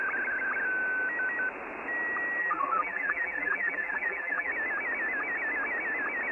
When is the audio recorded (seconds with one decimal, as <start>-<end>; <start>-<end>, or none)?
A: 0.0-2.4; 4.5-6.3